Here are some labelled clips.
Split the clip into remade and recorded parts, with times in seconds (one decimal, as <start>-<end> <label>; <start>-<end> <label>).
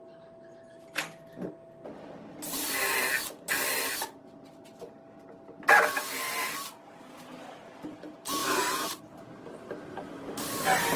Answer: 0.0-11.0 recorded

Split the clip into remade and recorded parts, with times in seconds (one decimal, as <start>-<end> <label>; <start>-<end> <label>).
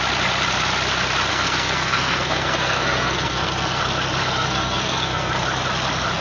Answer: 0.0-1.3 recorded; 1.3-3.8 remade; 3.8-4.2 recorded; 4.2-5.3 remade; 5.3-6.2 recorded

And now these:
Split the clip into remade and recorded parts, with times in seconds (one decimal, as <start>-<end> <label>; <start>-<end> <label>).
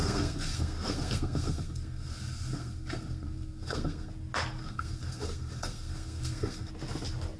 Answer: 0.0-4.1 remade; 4.1-4.6 recorded; 4.6-6.7 remade; 6.7-7.4 recorded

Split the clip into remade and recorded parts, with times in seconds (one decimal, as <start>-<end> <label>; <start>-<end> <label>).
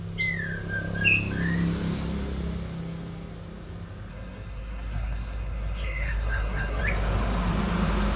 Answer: 0.0-4.1 recorded; 4.1-6.8 remade; 6.8-8.2 recorded